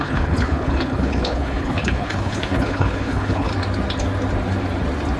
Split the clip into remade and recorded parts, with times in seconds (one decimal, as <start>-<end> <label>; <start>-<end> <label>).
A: 0.0-3.5 remade; 3.5-5.2 recorded